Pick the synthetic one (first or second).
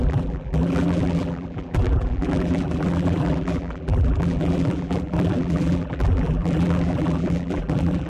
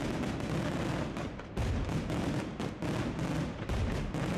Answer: first